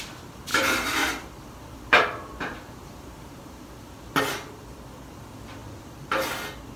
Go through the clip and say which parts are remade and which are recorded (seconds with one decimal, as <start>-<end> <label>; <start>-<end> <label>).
0.0-0.5 recorded; 0.5-4.2 remade; 4.2-5.6 recorded; 5.6-6.3 remade; 6.3-6.8 recorded